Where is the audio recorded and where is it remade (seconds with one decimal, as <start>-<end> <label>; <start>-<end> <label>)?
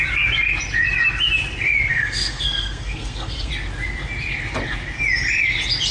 0.0-1.9 recorded; 1.9-3.5 remade; 3.5-5.9 recorded